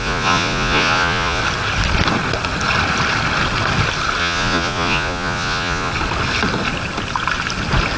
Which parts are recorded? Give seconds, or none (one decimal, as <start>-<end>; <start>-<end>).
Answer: 1.4-4.2; 5.9-8.0